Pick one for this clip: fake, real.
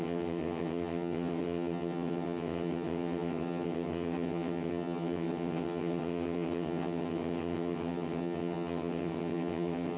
fake